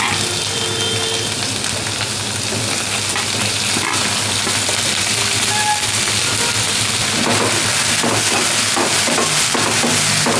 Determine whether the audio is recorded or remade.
recorded